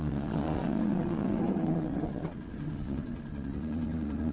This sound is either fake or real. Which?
fake